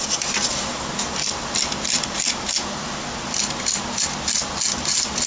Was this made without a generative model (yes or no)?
yes